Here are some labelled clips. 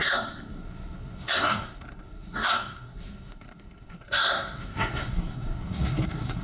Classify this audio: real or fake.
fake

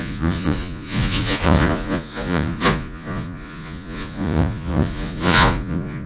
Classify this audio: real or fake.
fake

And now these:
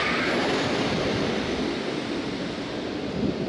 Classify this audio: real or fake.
real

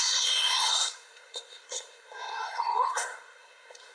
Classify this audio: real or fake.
fake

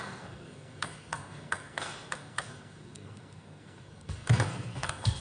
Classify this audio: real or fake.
fake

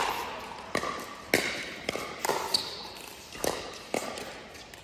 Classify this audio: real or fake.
real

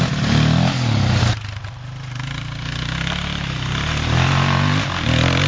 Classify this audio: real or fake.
real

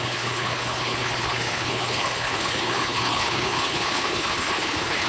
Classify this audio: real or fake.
fake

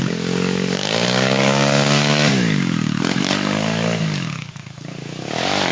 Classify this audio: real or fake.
fake